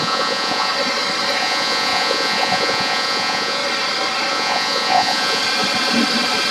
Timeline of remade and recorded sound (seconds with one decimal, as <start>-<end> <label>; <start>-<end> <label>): 0.0-0.7 remade; 0.7-1.4 recorded; 1.4-3.6 remade; 3.6-4.3 recorded; 4.3-5.4 remade; 5.4-6.5 recorded